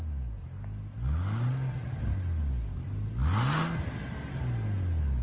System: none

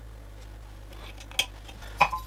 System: none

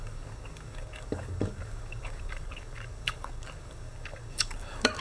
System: codec, DAC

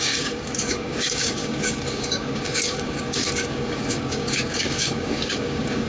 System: codec, DAC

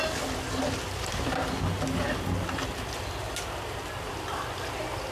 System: none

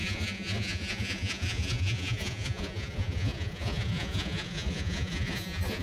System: vocoder, Vocos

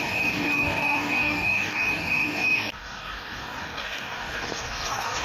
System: codec, DAC